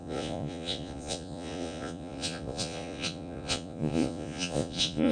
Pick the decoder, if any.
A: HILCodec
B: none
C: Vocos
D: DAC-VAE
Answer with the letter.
C